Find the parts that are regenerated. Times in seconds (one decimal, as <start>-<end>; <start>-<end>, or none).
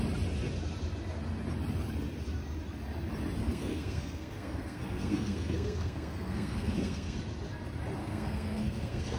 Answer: 3.4-7.2; 8.0-9.2